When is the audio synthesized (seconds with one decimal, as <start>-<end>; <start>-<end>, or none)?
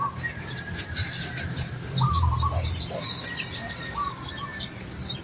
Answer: 0.0-3.1; 4.5-5.2